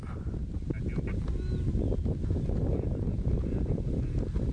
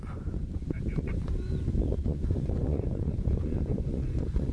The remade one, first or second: second